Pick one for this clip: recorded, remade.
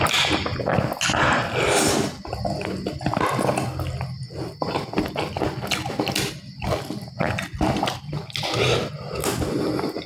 recorded